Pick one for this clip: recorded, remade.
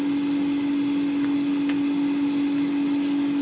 recorded